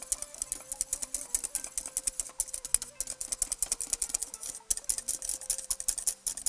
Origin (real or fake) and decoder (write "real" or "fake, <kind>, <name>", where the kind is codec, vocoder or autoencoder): real